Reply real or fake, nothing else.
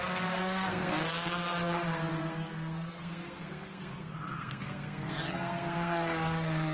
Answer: fake